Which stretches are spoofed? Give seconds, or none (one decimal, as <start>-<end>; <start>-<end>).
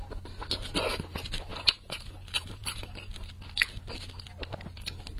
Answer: 1.5-3.3